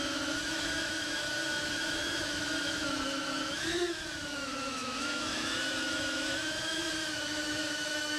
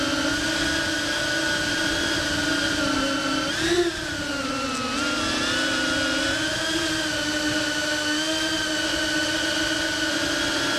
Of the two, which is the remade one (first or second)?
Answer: first